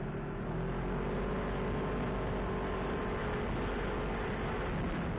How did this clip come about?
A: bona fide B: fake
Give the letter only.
A